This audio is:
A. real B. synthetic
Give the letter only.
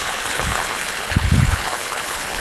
B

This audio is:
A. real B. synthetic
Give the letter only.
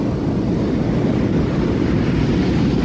A